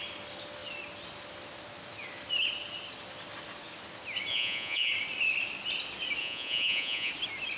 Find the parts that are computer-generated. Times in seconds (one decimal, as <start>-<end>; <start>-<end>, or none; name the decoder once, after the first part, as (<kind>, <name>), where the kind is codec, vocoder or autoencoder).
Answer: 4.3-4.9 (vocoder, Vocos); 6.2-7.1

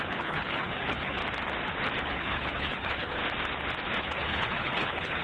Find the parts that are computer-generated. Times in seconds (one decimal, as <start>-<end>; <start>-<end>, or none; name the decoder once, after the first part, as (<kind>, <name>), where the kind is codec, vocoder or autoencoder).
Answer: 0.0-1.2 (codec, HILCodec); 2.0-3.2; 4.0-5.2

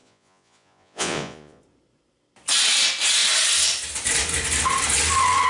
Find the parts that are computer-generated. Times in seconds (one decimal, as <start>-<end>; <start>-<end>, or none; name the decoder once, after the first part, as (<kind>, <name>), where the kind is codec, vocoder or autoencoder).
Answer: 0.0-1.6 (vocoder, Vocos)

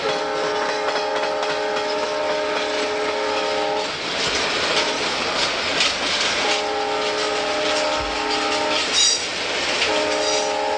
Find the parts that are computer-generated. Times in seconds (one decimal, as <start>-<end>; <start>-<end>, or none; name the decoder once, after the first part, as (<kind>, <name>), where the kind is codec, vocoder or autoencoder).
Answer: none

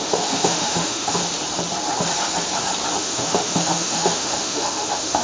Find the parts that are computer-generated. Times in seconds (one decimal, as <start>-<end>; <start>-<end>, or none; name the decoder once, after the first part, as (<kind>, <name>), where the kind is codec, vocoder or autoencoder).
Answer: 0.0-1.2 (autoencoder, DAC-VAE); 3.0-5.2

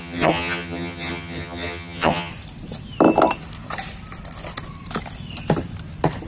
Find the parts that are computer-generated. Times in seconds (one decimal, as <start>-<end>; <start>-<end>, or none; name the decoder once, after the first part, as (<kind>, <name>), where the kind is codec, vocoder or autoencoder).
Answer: 0.0-2.3 (vocoder, HiFi-GAN)

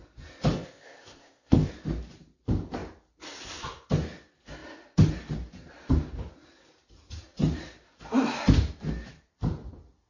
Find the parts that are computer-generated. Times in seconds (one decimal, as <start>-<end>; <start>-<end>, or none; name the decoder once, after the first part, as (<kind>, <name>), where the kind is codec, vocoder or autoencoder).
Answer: 0.5-1.7 (codec, ZipCodec)